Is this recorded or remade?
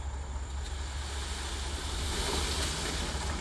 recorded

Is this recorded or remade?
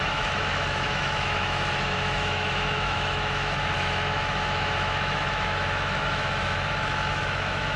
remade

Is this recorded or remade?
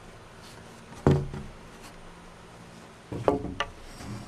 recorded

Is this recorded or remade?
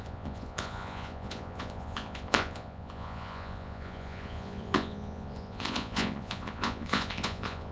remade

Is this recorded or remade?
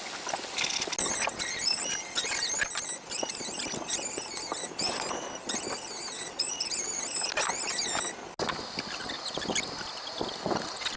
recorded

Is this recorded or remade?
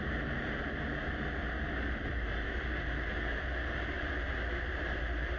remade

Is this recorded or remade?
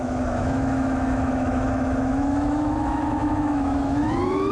remade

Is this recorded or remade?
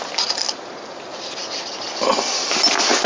recorded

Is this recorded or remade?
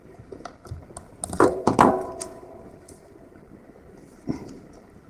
recorded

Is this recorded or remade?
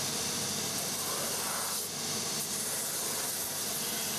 recorded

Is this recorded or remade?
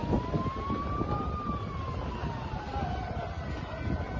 recorded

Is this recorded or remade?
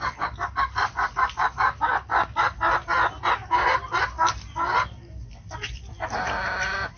recorded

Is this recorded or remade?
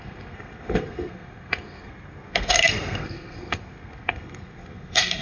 remade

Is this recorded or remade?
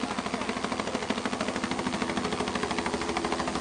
recorded